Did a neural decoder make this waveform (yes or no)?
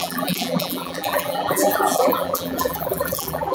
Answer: yes